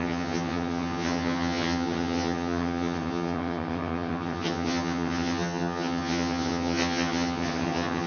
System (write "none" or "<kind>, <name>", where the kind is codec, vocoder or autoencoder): vocoder, HiFi-GAN